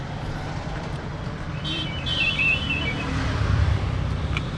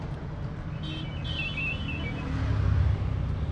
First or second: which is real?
second